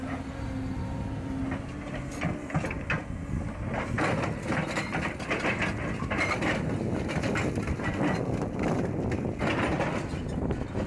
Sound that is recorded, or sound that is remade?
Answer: recorded